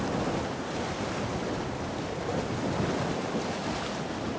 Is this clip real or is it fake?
real